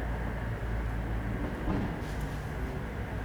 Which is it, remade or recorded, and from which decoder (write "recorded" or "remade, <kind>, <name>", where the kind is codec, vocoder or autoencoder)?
recorded